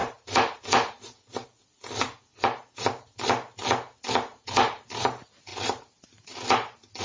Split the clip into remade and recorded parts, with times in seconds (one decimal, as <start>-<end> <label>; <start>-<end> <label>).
0.0-0.6 remade; 0.6-4.3 recorded; 4.3-4.8 remade; 4.8-5.5 recorded; 5.5-7.0 remade